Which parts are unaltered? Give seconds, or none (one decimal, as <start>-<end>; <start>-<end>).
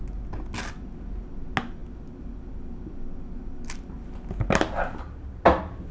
0.0-5.9